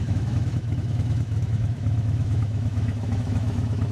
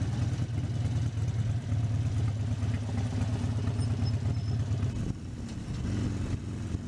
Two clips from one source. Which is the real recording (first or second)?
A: second